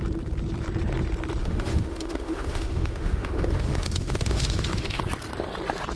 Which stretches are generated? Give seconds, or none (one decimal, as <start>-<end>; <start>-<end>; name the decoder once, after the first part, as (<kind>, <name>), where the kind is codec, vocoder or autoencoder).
1.4-5.0 (autoencoder, DAC-VAE)